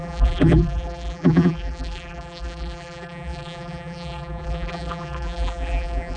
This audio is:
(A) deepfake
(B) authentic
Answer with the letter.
A